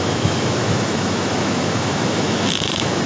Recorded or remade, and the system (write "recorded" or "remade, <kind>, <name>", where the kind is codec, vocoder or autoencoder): remade, autoencoder, DAC-VAE